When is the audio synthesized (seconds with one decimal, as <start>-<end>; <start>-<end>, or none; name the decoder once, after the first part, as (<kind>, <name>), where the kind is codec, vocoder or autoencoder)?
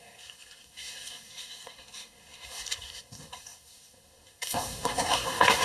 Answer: 0.0-5.6 (codec, SNAC)